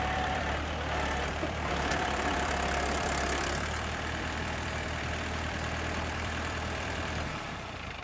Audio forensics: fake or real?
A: fake